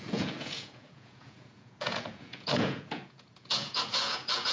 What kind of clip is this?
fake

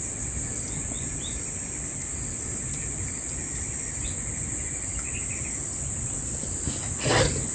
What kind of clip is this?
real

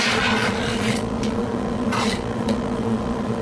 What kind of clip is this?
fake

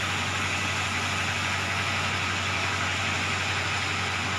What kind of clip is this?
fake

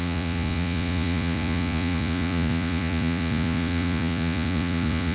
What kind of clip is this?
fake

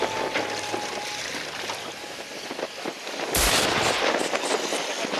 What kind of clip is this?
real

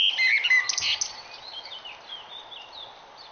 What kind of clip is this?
real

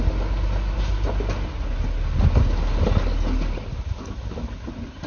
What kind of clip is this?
real